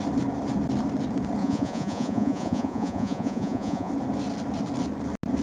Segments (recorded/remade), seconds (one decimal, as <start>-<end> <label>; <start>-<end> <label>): 0.0-1.4 recorded; 1.4-3.9 remade; 3.9-5.4 recorded